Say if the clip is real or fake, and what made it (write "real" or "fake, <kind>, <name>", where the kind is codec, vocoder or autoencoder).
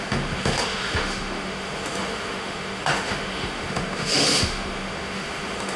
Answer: fake, autoencoder, DAC-VAE